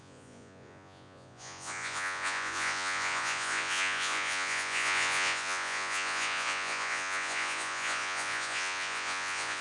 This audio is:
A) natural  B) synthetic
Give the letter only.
B